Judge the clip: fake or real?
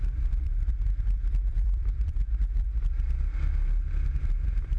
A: fake